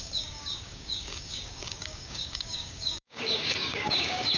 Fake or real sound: fake